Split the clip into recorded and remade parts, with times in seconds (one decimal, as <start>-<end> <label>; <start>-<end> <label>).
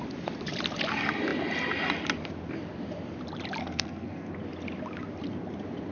0.0-3.6 recorded; 3.6-4.3 remade; 4.3-5.9 recorded